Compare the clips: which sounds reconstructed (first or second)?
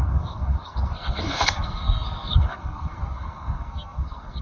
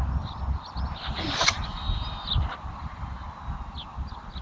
first